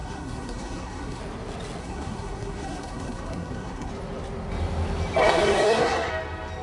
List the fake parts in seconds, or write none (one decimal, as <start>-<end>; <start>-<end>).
0.0-1.2; 1.8-3.9; 5.2-6.1